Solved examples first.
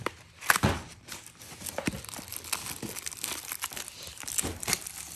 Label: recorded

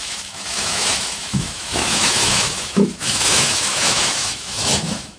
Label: remade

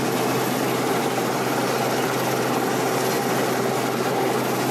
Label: recorded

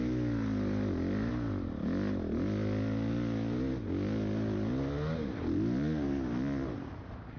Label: recorded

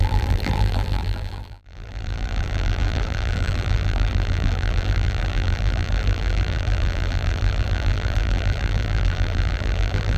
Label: remade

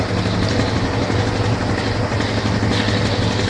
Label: recorded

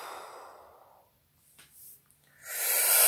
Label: recorded